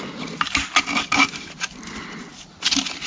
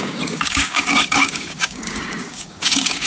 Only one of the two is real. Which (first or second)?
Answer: first